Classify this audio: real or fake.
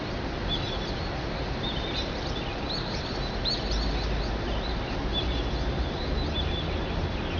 real